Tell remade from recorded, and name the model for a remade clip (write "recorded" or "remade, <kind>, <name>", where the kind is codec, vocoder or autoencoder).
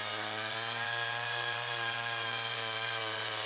remade, vocoder, Vocos